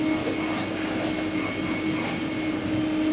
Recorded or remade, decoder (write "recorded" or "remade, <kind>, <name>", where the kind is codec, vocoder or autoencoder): recorded